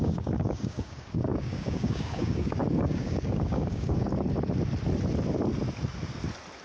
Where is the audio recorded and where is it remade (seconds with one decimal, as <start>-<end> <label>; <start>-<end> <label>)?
0.0-4.1 remade; 4.1-6.6 recorded